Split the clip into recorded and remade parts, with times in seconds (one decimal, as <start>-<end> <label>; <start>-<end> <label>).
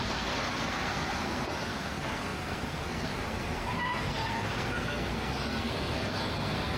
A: 0.0-6.8 remade